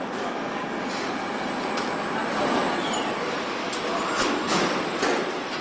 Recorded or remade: recorded